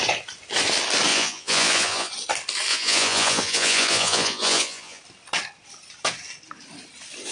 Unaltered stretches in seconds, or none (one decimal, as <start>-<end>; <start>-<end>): 0.0-1.1; 2.1-2.7; 5.0-7.3